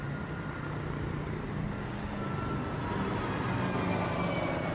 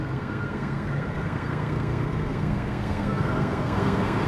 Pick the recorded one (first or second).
first